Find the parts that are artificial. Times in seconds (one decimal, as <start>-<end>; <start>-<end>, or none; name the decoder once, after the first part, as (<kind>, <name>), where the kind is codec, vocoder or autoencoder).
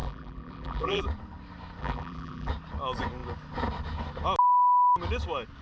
0.0-1.0 (vocoder, BigVGAN v2); 1.8-2.5